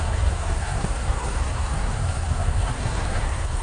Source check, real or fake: fake